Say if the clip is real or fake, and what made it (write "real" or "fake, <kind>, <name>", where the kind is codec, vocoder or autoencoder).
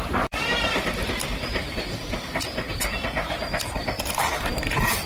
fake, vocoder, BigVGAN v2